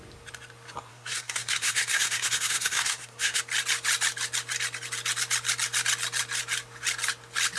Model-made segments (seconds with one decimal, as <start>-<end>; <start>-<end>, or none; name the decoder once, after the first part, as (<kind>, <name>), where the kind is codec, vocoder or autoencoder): 0.9-3.4 (codec, SNAC)